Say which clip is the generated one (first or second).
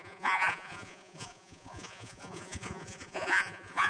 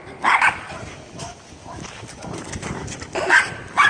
first